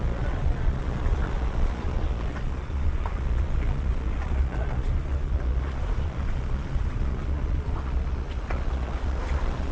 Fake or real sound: fake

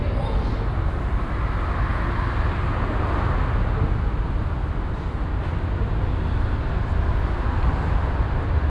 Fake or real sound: real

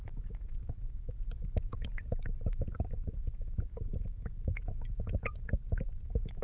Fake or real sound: fake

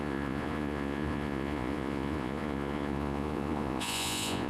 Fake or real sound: fake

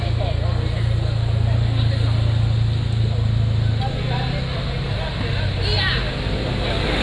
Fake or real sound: real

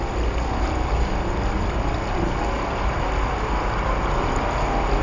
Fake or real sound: real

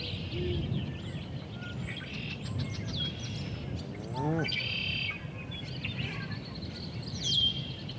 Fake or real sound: real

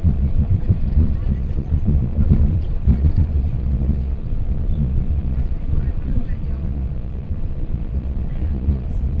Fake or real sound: fake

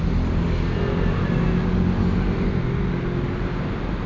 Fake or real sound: real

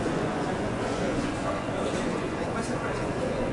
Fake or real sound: fake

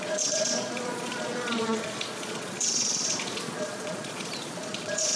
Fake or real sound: fake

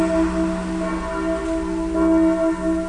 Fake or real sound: real